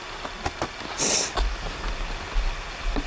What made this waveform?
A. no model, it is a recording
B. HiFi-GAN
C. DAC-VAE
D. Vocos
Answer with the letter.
A